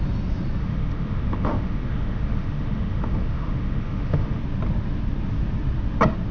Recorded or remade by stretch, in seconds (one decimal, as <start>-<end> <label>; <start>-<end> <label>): 0.0-0.6 recorded; 0.6-4.4 remade; 4.4-6.3 recorded